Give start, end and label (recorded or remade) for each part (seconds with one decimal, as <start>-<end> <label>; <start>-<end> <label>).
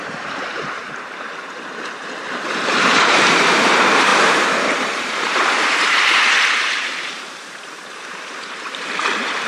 0.0-9.5 remade